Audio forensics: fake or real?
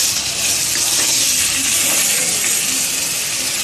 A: real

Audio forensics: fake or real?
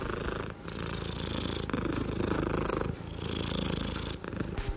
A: real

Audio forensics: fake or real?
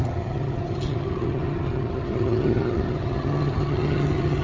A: fake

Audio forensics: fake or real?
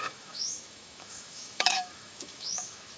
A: fake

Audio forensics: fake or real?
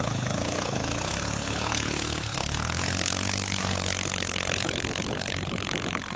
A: fake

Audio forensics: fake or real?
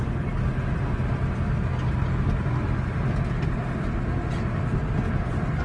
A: real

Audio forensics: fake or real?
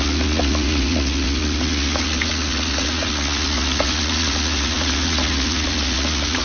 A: fake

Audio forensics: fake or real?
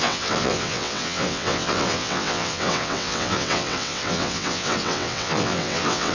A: fake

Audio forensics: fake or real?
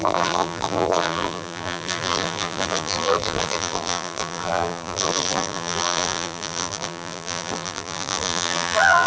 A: fake